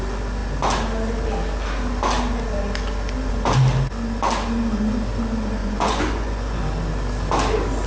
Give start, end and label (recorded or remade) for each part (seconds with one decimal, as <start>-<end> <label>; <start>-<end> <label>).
0.0-5.6 recorded; 5.6-6.6 remade; 6.6-7.9 recorded